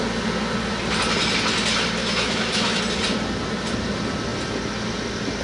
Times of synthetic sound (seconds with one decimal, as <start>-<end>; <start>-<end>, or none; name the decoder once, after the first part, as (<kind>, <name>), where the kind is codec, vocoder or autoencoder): 2.0-2.8 (autoencoder, DAC-VAE)